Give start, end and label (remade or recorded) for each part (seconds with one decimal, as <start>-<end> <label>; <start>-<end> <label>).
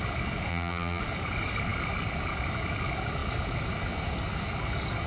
0.0-0.5 recorded; 0.5-1.0 remade; 1.0-5.1 recorded